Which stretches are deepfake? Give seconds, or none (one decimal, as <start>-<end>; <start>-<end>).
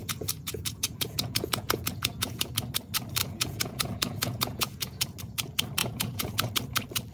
0.0-2.5; 3.2-5.2; 5.8-6.5